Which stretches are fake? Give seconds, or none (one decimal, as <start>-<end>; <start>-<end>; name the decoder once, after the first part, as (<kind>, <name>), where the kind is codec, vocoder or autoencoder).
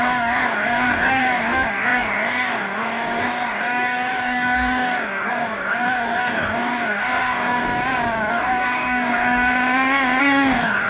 0.0-7.6 (codec, DAC); 8.3-9.5; 10.2-10.9